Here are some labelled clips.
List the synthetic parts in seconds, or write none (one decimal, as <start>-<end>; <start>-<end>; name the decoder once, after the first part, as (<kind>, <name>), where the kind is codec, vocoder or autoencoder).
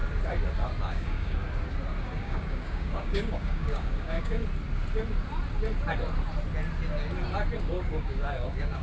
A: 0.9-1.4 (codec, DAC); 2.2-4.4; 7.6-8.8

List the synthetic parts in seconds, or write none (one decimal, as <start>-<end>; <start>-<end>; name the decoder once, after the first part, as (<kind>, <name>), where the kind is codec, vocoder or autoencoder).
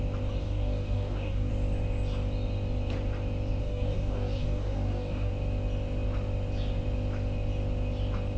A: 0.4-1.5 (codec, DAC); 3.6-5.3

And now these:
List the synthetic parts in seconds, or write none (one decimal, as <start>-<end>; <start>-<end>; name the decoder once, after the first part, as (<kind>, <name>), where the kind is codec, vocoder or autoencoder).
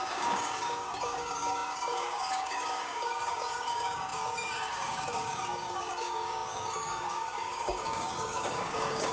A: 0.0-9.1 (codec, DAC)